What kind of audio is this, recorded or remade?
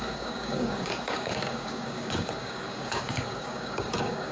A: remade